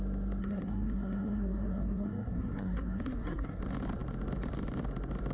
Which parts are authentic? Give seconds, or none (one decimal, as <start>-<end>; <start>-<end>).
0.0-0.4; 3.6-5.3